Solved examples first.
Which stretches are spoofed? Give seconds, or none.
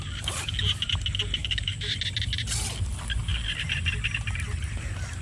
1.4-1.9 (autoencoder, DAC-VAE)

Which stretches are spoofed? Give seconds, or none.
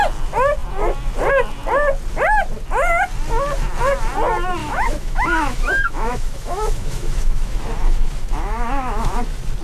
4.6-9.2 (autoencoder, DAC-VAE)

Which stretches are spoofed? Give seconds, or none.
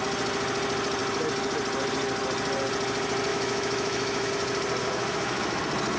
3.3-4.3 (autoencoder, DAC-VAE); 4.8-5.6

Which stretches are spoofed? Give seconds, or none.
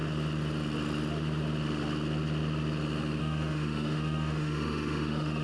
3.2-5.4 (autoencoder, DAC-VAE)